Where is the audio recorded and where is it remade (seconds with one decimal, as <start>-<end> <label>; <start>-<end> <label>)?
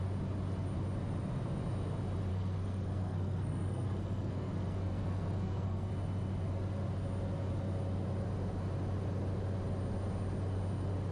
0.0-2.3 recorded; 2.3-5.9 remade; 5.9-11.1 recorded